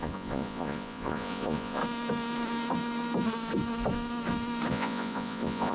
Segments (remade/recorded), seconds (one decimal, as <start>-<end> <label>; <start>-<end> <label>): 0.0-1.8 remade; 1.8-4.7 recorded; 4.7-5.7 remade